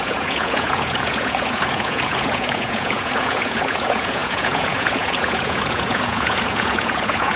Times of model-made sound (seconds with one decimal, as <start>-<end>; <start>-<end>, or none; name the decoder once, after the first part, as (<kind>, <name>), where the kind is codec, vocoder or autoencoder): 0.0-7.4 (vocoder, Vocos)